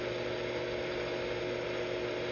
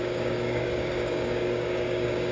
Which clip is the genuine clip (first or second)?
first